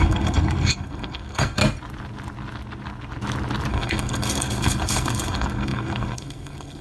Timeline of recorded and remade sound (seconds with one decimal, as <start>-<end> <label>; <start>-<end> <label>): 0.0-1.6 remade; 1.6-3.7 recorded; 3.7-6.8 remade